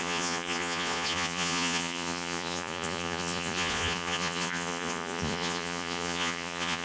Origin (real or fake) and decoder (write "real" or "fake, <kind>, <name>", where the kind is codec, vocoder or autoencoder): fake, vocoder, Vocos